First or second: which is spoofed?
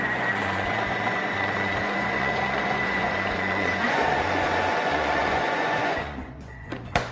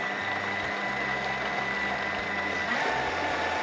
first